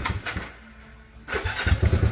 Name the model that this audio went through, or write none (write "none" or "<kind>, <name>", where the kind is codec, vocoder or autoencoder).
none